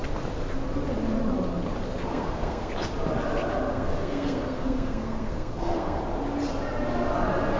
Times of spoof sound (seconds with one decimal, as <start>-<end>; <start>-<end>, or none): 2.1-2.7; 3.7-6.0